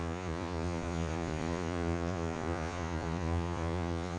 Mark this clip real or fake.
fake